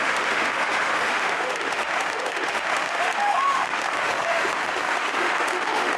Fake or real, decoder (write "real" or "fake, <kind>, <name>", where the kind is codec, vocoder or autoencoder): fake, autoencoder, DAC-VAE